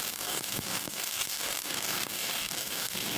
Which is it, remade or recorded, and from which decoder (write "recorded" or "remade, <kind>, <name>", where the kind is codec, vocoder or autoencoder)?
remade, codec, DAC